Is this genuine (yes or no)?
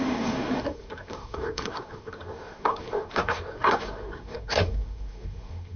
no